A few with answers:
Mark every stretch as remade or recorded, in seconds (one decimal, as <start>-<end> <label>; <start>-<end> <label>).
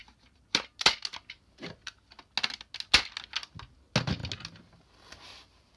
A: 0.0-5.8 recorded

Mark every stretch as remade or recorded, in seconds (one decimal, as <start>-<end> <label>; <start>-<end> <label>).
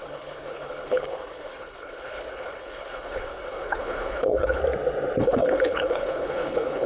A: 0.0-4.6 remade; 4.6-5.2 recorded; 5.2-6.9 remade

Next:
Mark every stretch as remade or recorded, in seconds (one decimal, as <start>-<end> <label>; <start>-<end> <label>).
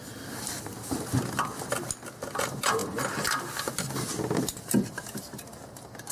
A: 0.0-6.1 recorded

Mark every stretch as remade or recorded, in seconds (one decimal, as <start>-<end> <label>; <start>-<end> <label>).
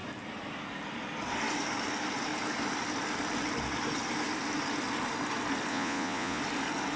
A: 0.0-5.7 recorded; 5.7-6.4 remade; 6.4-7.0 recorded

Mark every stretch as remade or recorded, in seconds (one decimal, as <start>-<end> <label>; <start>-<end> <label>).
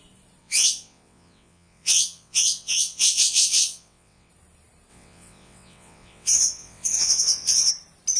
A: 0.0-0.4 recorded; 0.4-4.3 remade; 4.3-4.9 recorded; 4.9-7.7 remade; 7.7-8.2 recorded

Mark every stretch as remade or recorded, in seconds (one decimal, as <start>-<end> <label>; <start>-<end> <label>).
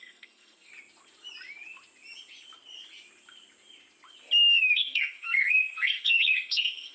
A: 0.0-0.7 remade; 0.7-4.5 recorded; 4.5-6.9 remade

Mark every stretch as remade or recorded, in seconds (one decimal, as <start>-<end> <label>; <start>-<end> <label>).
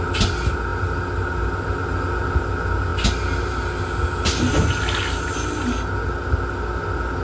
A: 0.0-7.2 recorded